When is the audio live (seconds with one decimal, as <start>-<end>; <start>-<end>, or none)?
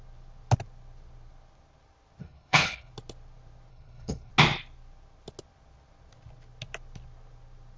0.0-2.2; 2.9-3.7; 4.3-7.8